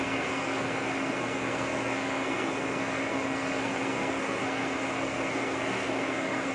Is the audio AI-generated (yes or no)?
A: yes